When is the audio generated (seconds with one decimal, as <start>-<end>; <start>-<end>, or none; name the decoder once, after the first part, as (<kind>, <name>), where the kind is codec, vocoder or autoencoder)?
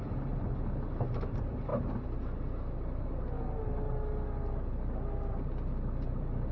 none